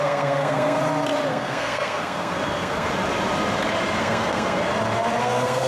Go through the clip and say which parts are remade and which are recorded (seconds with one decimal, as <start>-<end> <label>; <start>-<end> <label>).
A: 0.0-0.8 remade; 0.8-1.3 recorded; 1.3-2.9 remade; 2.9-4.0 recorded; 4.0-4.7 remade; 4.7-5.2 recorded; 5.2-5.7 remade